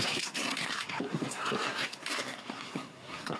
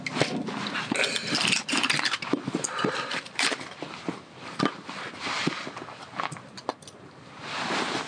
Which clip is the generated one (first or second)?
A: first